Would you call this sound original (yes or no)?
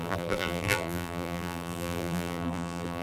no